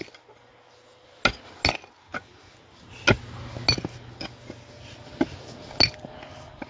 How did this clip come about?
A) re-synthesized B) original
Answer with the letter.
B